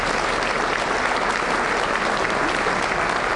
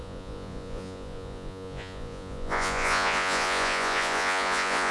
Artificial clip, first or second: second